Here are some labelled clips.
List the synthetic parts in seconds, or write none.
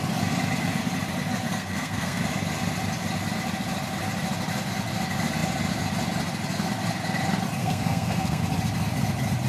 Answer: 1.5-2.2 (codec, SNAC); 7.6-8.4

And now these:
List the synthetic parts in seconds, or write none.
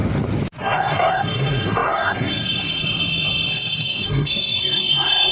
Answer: 0.6-5.3 (codec, SNAC)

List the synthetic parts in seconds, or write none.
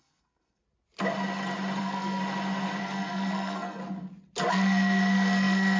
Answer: 0.0-0.6 (codec, SNAC); 1.8-2.2; 2.8-3.8; 4.5-5.8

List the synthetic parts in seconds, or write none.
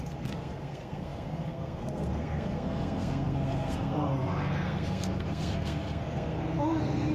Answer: 0.0-7.1 (codec, SNAC)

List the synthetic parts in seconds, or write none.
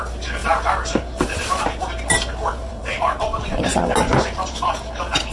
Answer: none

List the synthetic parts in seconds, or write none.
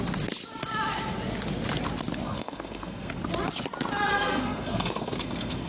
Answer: 2.2-3.1 (codec, SNAC); 4.1-5.7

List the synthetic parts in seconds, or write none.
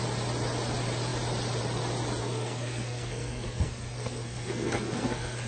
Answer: 2.2-5.5 (codec, SNAC)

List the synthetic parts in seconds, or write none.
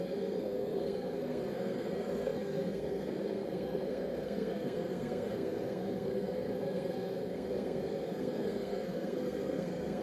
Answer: 0.0-10.0 (codec, SNAC)